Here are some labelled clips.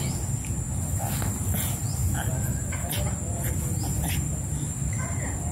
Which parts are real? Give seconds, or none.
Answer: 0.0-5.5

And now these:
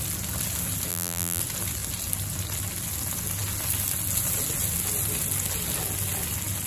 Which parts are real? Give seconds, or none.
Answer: 0.0-0.9; 1.4-6.7

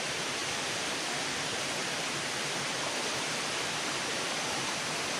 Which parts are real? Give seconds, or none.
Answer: 0.4-0.9

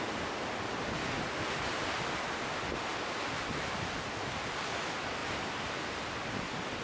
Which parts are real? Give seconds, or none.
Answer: 0.0-5.2; 6.1-6.8

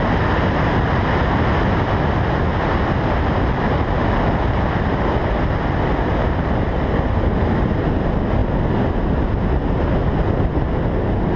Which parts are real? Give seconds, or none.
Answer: 0.0-11.4

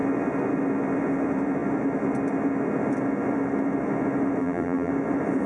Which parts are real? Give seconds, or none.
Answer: 0.0-4.4; 4.9-5.5